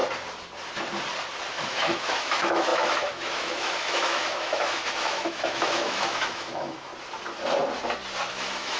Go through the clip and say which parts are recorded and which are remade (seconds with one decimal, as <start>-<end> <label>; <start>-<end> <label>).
0.0-1.5 recorded; 1.5-6.9 remade; 6.9-8.3 recorded; 8.3-8.8 remade